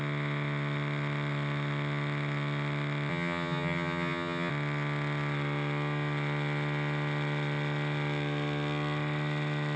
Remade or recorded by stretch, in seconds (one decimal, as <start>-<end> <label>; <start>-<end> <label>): 0.0-3.1 recorded; 3.1-4.5 remade; 4.5-9.8 recorded